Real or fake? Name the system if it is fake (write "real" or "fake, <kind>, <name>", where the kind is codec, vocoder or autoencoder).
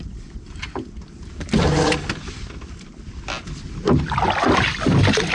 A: real